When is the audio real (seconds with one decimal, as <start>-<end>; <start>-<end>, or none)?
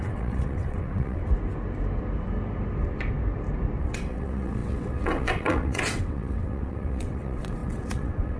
1.2-3.8